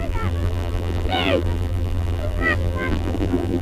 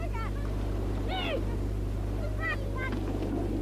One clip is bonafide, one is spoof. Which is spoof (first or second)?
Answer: first